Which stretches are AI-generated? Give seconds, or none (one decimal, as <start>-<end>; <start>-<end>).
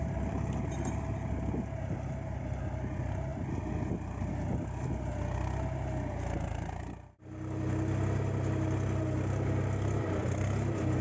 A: none